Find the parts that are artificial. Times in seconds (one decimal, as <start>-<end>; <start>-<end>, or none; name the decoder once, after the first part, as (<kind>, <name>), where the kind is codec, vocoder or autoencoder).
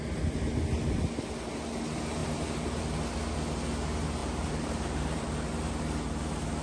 2.2-2.8 (vocoder, BigVGAN v2); 4.2-5.3